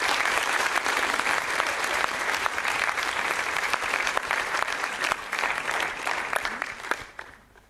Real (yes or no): no